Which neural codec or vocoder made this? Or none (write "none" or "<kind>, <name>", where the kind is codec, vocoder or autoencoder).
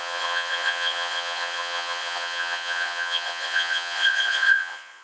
vocoder, Vocos